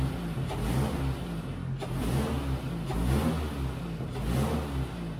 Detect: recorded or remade recorded